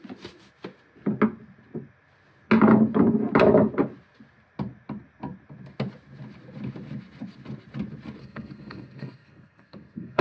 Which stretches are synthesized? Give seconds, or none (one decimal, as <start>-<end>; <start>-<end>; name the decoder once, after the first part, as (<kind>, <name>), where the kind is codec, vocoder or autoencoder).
8.2-10.2 (codec, SNAC)